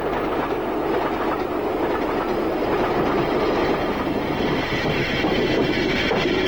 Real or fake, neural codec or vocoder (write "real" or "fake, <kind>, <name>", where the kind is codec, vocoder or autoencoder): real